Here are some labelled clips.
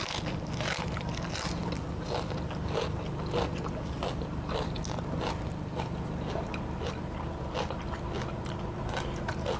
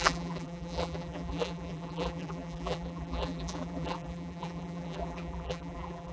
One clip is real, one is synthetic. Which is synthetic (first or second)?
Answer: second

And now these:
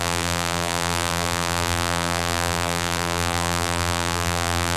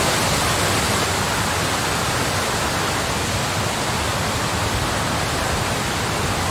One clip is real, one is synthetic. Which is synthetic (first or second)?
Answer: first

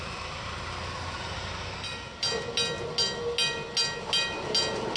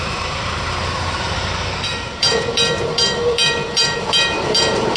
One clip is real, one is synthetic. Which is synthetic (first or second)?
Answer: second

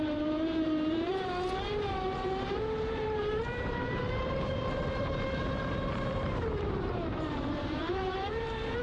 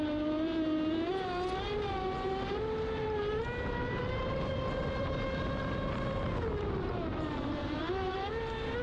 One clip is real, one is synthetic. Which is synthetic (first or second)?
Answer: first